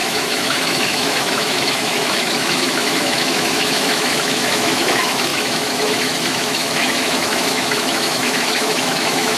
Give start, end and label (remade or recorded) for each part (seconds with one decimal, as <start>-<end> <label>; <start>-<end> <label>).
0.0-9.4 remade